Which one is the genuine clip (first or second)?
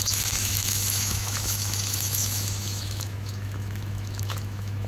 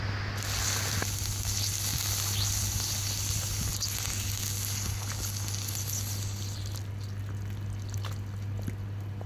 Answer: second